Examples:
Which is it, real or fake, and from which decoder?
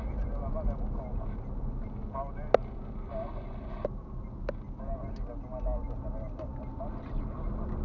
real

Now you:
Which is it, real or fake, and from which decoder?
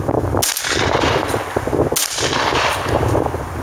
real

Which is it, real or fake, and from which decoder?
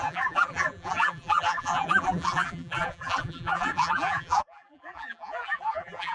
fake, vocoder, BigVGAN v2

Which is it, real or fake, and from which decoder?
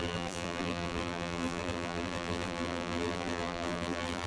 fake, vocoder, BigVGAN v2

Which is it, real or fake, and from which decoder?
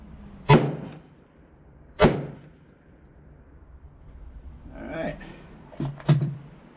fake, vocoder, BigVGAN v2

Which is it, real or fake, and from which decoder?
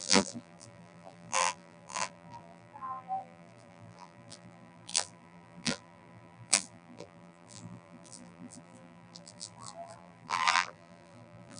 fake, vocoder, BigVGAN v2